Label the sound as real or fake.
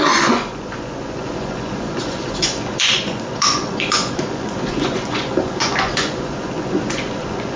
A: fake